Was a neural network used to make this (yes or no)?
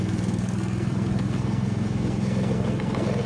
yes